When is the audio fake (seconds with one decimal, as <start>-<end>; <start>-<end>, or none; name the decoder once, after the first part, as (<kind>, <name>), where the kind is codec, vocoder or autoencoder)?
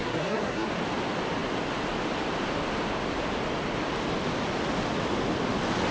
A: 0.0-0.7 (codec, SNAC)